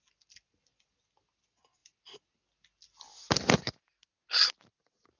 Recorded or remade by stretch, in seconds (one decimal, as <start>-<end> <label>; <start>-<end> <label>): 0.0-5.2 recorded